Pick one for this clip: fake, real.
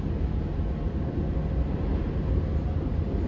real